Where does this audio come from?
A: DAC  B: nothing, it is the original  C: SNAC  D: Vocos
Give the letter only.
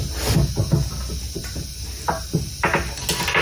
B